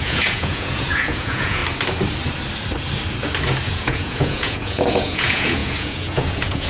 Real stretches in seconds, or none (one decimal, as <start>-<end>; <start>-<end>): 1.6-3.7